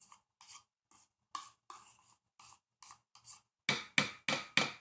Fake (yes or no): no